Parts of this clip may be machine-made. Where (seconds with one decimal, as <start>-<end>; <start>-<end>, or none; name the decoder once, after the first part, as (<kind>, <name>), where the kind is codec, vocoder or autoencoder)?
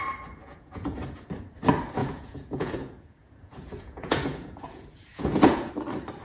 0.4-1.3 (vocoder, Vocos); 2.0-5.7